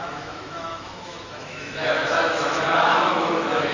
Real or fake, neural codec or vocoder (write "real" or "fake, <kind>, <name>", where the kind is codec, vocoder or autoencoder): fake, autoencoder, DAC-VAE